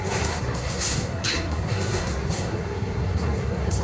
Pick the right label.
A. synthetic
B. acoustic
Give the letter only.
A